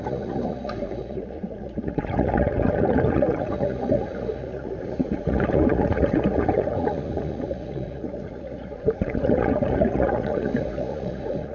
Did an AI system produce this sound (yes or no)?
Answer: yes